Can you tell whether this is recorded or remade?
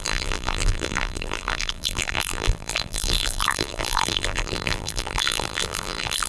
remade